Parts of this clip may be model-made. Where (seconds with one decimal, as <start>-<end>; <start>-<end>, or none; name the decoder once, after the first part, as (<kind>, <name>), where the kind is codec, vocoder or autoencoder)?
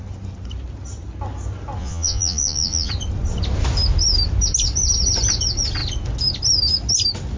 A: 1.8-2.9 (vocoder, Vocos)